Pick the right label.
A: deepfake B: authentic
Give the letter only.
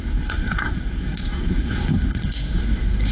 A